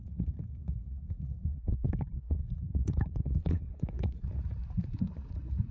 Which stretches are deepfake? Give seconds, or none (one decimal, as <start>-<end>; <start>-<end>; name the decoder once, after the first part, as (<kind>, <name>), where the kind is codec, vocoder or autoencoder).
0.0-5.7 (vocoder, Vocos)